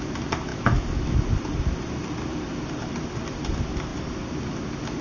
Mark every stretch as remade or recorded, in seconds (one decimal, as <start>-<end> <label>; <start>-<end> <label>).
0.0-0.5 recorded; 0.5-3.5 remade; 3.5-5.0 recorded